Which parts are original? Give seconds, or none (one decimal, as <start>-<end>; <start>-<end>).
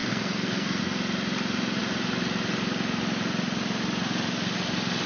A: 0.8-5.1